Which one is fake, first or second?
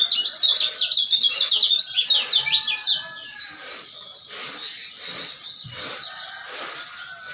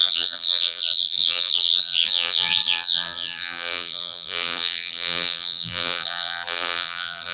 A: second